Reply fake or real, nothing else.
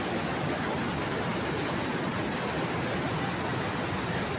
real